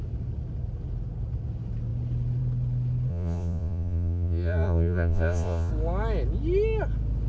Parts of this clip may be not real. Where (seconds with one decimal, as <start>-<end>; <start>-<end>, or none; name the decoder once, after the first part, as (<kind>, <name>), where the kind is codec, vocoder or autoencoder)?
3.1-5.7 (vocoder, Vocos)